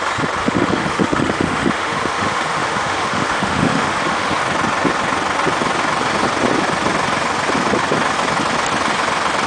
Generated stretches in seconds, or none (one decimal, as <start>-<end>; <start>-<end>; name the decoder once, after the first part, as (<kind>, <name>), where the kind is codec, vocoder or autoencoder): 0.4-4.4 (autoencoder, DAC-VAE)